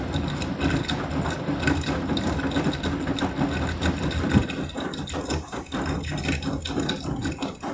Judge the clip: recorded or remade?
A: recorded